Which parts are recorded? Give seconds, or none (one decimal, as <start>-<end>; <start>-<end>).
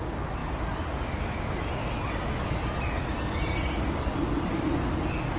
0.0-5.4